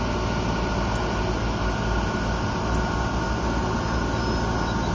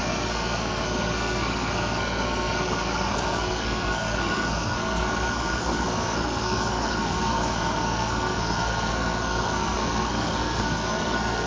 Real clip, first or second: first